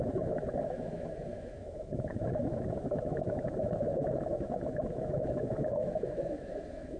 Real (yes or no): no